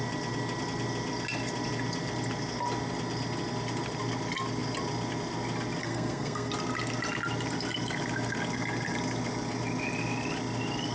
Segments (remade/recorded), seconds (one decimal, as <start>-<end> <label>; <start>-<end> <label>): 0.0-5.8 recorded; 5.8-6.5 remade; 6.5-10.9 recorded